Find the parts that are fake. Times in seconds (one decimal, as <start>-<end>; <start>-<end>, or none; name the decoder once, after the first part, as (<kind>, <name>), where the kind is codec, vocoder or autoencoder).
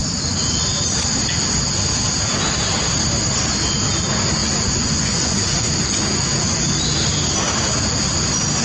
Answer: 4.4-6.6 (vocoder, Vocos)